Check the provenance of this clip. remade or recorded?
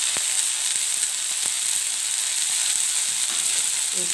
recorded